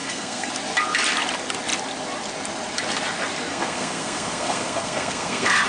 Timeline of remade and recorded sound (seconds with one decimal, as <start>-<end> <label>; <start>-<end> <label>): 0.0-0.5 remade; 0.5-3.5 recorded; 3.5-5.7 remade